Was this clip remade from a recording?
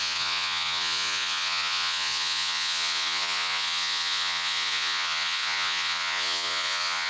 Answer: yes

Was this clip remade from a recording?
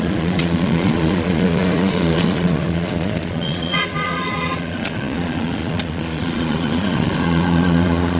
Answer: yes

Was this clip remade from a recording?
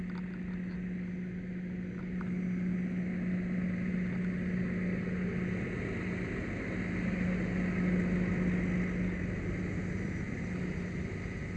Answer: no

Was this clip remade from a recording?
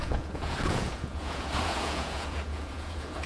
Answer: yes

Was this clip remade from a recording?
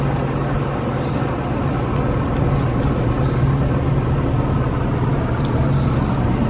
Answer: no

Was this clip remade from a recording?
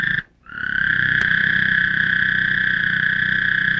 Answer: yes